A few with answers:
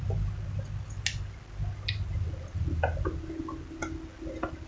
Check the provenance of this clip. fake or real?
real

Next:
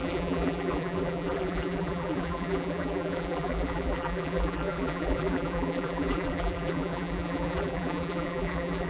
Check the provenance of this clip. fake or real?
fake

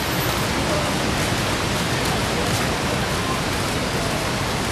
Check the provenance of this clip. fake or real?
real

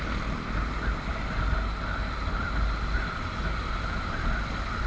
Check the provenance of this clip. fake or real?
real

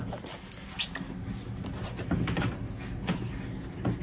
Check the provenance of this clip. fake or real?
real